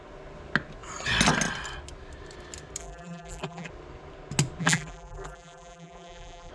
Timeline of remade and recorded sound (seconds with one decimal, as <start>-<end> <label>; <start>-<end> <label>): 0.0-2.8 recorded; 2.8-3.7 remade; 3.7-4.6 recorded; 4.6-6.5 remade